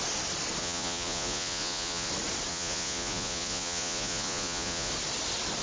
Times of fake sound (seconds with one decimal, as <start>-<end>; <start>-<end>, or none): 0.6-2.1; 2.5-4.9